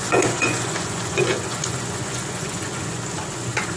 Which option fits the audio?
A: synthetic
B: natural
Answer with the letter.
A